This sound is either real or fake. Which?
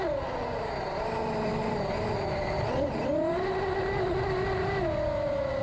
real